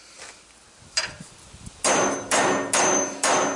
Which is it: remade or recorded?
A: recorded